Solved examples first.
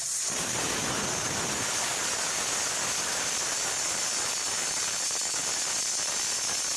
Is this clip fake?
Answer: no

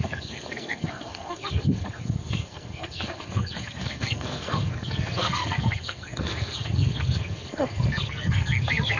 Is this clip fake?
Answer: yes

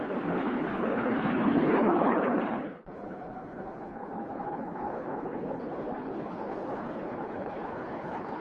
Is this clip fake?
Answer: yes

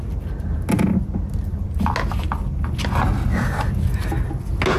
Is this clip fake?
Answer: no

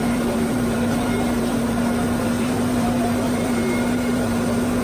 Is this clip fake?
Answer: yes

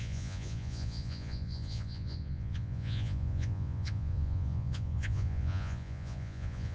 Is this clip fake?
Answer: yes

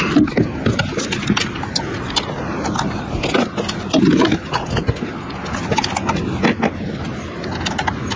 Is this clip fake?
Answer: no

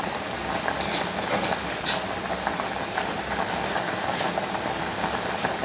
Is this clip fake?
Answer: no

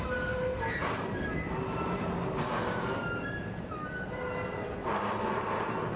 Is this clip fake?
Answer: no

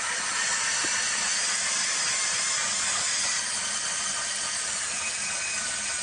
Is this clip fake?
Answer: no